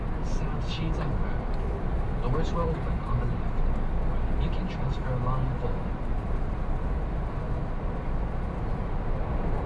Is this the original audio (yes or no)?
yes